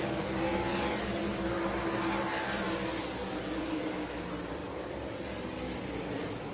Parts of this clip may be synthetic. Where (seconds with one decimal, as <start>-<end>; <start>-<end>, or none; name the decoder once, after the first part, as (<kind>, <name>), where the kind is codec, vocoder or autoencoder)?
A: none